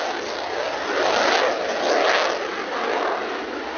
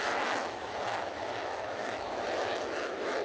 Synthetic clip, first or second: second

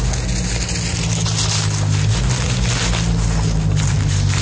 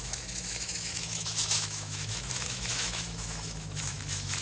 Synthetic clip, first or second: second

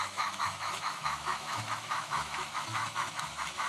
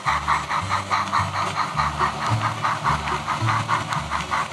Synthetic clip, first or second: first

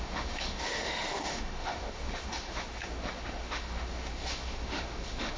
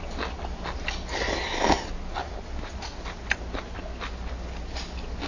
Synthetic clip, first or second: first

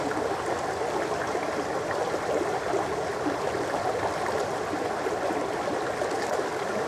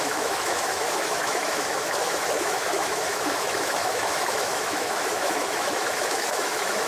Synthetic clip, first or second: second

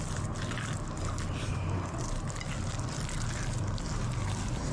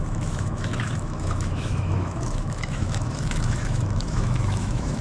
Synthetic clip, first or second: second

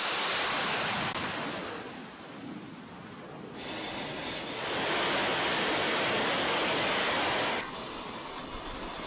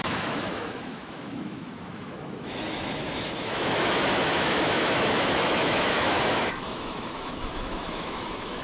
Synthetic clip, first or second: second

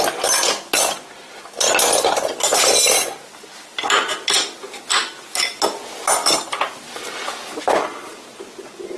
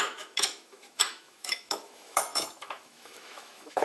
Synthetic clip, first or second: second